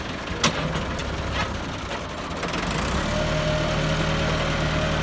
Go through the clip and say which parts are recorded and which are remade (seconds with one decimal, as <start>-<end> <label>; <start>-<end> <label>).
0.0-5.0 recorded